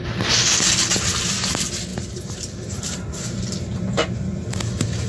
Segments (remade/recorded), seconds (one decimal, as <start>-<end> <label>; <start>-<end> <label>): 0.0-1.9 recorded; 1.9-4.6 remade; 4.6-5.1 recorded